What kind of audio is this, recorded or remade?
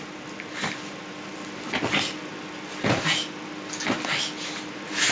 recorded